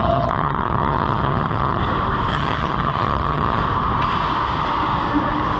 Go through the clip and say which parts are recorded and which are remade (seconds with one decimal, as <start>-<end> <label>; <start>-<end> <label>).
0.0-1.8 remade; 1.8-2.3 recorded; 2.3-3.6 remade; 3.6-5.6 recorded